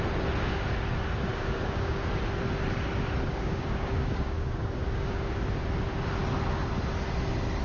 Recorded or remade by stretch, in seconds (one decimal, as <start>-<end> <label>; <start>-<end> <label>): 0.0-1.3 recorded; 1.3-2.2 remade; 2.2-3.3 recorded; 3.3-5.4 remade; 5.4-7.6 recorded